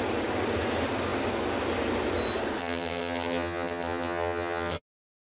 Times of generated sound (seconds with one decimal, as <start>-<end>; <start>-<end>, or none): 2.6-4.8